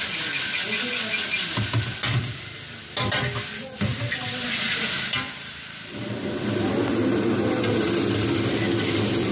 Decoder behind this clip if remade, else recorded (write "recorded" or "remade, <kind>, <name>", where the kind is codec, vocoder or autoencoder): recorded